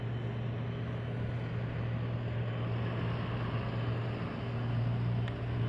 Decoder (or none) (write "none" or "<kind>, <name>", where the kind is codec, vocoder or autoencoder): none